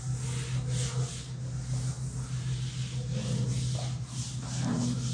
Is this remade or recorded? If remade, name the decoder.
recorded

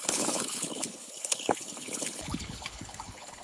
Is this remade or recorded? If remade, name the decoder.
remade, codec, HILCodec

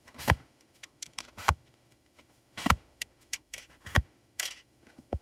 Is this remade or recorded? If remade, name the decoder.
remade, autoencoder, DAC-VAE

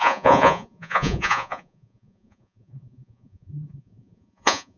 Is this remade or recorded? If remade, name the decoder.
remade, vocoder, Vocos